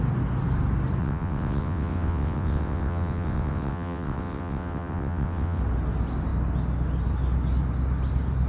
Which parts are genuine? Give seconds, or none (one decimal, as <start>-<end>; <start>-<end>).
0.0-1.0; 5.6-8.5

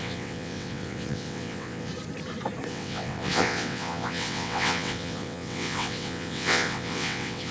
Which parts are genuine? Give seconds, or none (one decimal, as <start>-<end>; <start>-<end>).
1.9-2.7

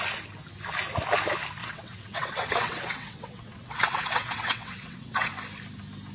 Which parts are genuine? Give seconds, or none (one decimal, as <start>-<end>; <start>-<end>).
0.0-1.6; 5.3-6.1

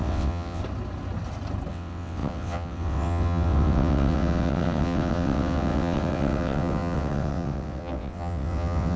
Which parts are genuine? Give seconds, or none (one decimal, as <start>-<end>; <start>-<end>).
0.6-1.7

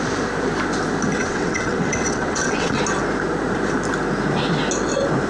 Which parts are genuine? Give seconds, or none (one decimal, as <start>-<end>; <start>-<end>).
0.0-1.2; 2.8-5.3

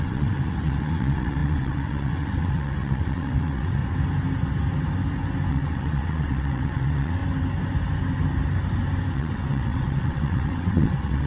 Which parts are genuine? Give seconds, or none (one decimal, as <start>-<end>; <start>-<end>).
3.8-5.5; 7.2-9.1

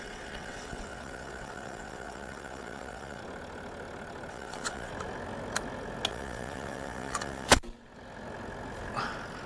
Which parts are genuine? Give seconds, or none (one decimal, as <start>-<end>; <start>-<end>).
3.2-4.3; 4.9-6.1; 7.6-9.5